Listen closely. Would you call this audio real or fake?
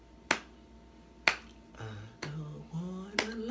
real